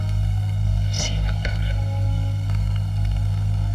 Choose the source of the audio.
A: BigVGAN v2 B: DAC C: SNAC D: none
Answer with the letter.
C